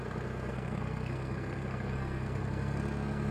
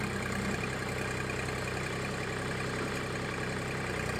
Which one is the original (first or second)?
second